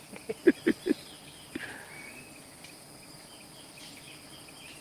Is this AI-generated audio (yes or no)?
no